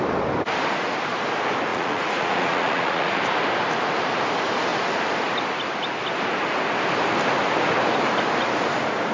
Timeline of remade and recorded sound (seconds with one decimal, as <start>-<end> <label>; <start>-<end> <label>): 0.0-1.7 recorded; 1.7-3.2 remade; 3.2-9.1 recorded